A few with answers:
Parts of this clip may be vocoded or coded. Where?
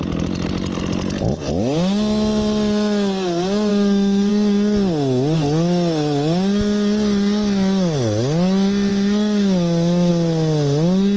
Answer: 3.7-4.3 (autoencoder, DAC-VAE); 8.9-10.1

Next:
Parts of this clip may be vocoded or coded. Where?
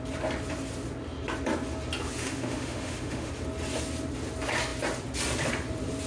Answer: 2.2-3.3 (autoencoder, DAC-VAE)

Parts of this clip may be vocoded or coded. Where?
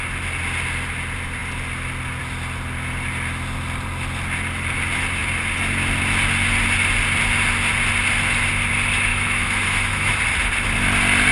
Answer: 9.1-10.1 (autoencoder, DAC-VAE)